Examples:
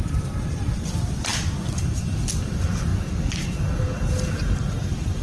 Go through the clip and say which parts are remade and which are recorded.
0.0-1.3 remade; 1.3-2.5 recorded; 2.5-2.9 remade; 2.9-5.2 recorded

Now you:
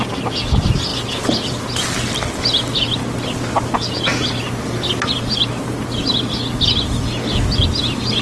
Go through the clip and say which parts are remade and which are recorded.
0.0-8.2 recorded

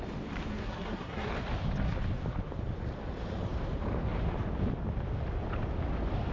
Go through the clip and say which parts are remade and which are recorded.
0.0-0.5 recorded; 0.5-1.3 remade; 1.3-6.3 recorded

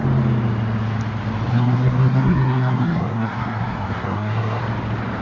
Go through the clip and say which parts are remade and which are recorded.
0.0-1.5 recorded; 1.5-4.6 remade; 4.6-5.2 recorded